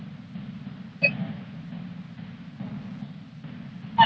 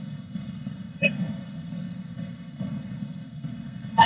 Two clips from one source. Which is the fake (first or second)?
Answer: second